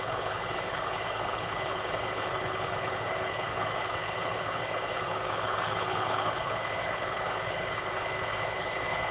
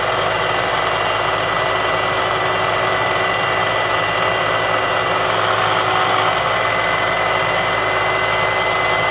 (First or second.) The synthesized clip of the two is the first